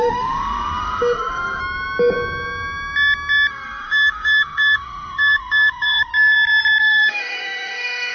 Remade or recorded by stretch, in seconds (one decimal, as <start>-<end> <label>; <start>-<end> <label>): 0.0-1.6 remade; 1.6-3.5 recorded; 3.5-6.1 remade; 6.1-6.8 recorded; 6.8-8.1 remade

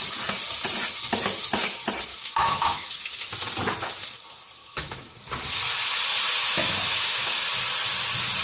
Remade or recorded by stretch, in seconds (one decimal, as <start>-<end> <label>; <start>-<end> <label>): 0.0-2.1 recorded; 2.1-2.9 remade; 2.9-4.6 recorded; 4.6-5.2 remade; 5.2-6.4 recorded; 6.4-7.4 remade; 7.4-8.4 recorded

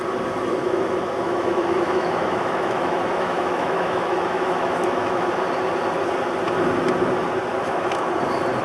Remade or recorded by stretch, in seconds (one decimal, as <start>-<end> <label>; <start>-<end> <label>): 0.0-0.6 recorded; 0.6-5.4 remade; 5.4-7.5 recorded; 7.5-8.1 remade; 8.1-8.6 recorded